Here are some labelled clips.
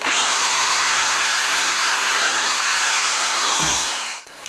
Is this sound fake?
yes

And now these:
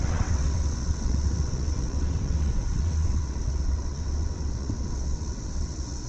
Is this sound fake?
yes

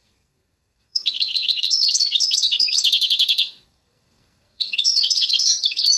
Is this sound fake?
yes